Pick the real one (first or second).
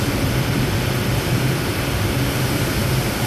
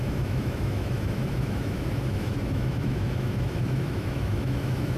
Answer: first